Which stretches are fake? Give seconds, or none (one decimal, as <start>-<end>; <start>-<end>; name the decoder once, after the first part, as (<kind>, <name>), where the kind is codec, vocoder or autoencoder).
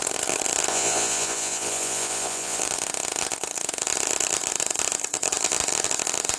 0.7-2.6 (vocoder, Vocos)